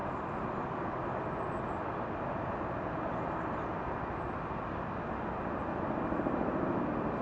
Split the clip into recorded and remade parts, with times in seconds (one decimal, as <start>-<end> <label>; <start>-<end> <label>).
0.0-7.2 recorded